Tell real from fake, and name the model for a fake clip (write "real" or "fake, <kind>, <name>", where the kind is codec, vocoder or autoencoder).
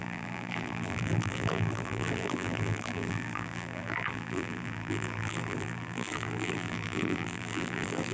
fake, vocoder, BigVGAN v2